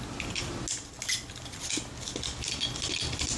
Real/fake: real